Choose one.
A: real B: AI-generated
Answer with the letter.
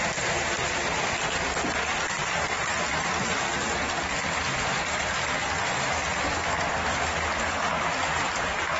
A